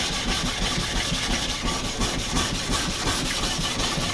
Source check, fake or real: real